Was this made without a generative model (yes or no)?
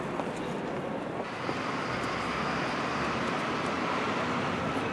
yes